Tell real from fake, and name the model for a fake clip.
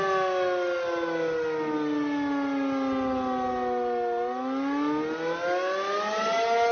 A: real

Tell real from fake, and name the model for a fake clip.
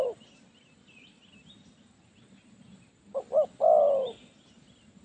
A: real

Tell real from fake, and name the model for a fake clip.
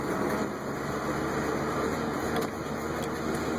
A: real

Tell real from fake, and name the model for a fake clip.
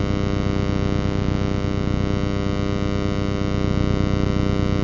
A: real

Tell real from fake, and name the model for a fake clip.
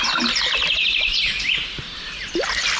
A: real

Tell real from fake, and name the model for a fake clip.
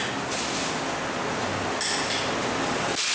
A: real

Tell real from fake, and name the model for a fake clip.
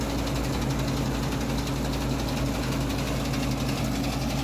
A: real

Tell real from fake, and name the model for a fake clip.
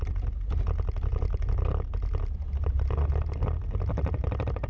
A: real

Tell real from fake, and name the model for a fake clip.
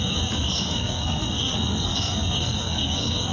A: fake, codec, SNAC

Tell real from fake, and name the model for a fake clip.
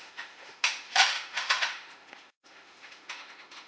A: fake, autoencoder, DAC-VAE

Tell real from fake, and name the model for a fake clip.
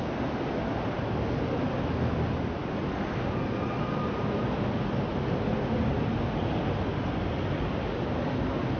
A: real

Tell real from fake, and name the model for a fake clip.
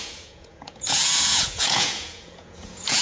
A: fake, vocoder, Vocos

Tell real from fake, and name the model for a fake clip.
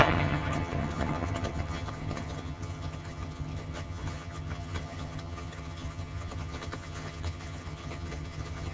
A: fake, vocoder, HiFi-GAN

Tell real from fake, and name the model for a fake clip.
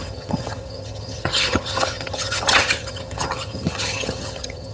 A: fake, vocoder, HiFi-GAN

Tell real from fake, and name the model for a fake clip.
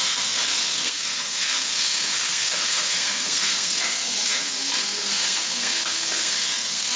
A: fake, codec, SNAC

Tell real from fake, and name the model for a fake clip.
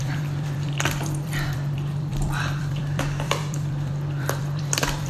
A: fake, vocoder, BigVGAN v2